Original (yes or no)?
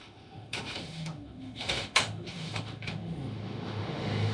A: no